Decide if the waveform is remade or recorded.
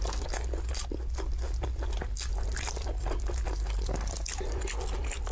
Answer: remade